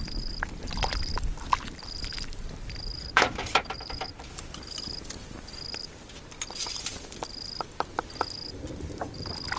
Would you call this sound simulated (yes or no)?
no